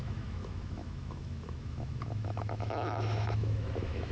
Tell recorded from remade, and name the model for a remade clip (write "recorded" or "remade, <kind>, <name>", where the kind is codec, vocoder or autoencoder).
remade, autoencoder, DAC-VAE